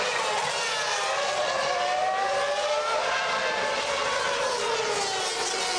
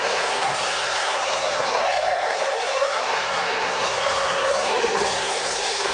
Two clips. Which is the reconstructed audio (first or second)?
second